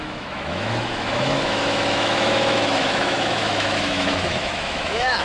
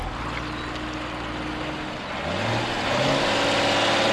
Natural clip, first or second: second